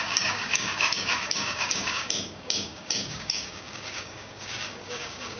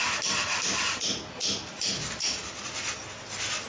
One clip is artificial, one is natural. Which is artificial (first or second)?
first